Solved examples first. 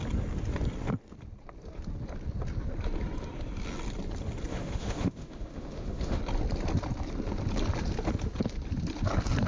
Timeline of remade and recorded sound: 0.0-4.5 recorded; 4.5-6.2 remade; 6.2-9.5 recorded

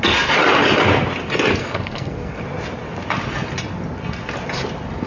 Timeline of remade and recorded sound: 0.0-1.6 recorded; 1.6-2.4 remade; 2.4-5.1 recorded

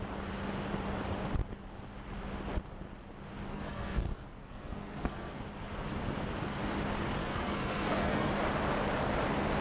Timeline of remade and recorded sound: 0.0-3.5 recorded; 3.5-5.4 remade; 5.4-7.2 recorded; 7.2-8.3 remade; 8.3-9.6 recorded

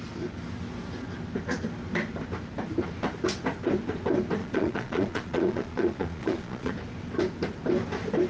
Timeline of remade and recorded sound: 0.0-4.4 recorded; 4.4-6.7 remade; 6.7-8.3 recorded